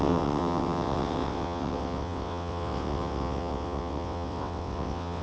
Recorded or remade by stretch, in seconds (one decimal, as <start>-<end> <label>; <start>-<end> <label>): 0.0-5.2 remade

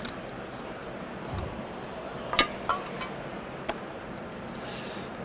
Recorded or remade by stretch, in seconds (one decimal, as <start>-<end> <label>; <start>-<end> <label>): 0.0-0.8 recorded; 0.8-3.0 remade; 3.0-5.2 recorded